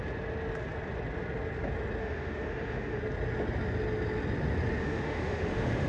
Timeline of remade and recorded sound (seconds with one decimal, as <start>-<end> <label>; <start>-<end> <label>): 0.0-2.0 recorded; 2.0-3.0 remade; 3.0-4.8 recorded; 4.8-5.9 remade